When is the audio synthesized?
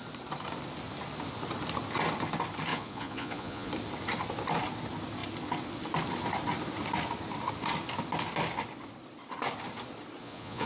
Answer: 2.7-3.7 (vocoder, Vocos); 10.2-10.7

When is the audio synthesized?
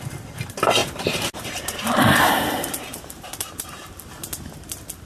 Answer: 0.8-3.9 (vocoder, BigVGAN v2)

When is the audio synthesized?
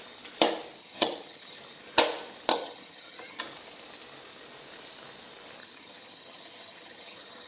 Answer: 0.8-1.6 (vocoder, HiFi-GAN); 2.5-3.4; 5.6-7.5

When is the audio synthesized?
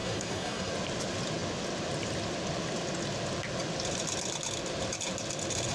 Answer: 0.0-0.7 (codec, SNAC)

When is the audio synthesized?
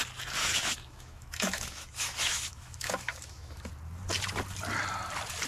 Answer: 0.4-3.7 (autoencoder, DAC-VAE)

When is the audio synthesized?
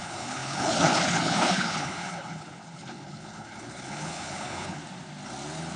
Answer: 0.0-4.8 (codec, HILCodec)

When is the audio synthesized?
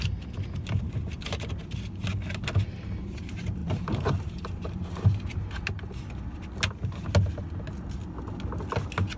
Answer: 3.6-5.5 (vocoder, BigVGAN v2)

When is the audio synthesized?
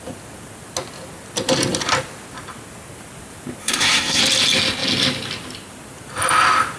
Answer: 3.6-4.2 (codec, SNAC)